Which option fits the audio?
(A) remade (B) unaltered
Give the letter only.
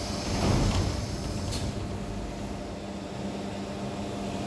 B